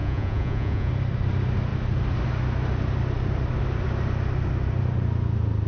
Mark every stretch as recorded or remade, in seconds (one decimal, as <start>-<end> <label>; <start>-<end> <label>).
0.0-0.9 remade; 0.9-5.7 recorded